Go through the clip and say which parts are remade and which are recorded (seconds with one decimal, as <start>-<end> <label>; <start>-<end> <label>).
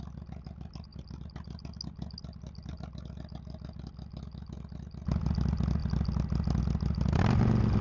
0.0-7.8 recorded